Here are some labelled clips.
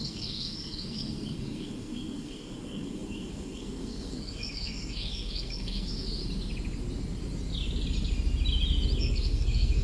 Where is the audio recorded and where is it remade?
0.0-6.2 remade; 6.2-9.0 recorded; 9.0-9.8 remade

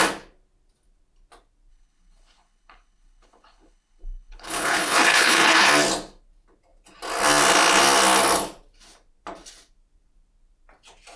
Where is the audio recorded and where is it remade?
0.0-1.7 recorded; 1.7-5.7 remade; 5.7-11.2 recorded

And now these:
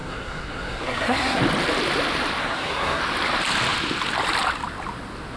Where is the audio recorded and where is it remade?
0.0-1.4 remade; 1.4-2.4 recorded; 2.4-3.0 remade; 3.0-5.4 recorded

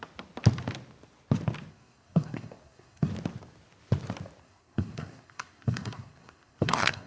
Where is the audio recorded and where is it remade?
0.0-1.7 recorded; 1.7-3.1 remade; 3.1-4.4 recorded; 4.4-7.1 remade